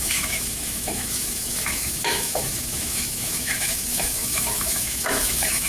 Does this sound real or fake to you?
fake